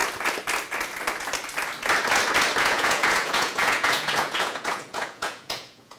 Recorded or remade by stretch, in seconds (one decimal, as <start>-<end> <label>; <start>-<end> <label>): 0.0-2.6 recorded; 2.6-6.0 remade